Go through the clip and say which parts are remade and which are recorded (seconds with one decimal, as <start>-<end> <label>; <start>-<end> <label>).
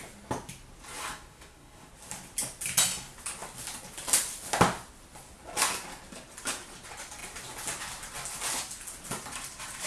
0.0-1.0 recorded; 1.0-1.9 remade; 1.9-9.9 recorded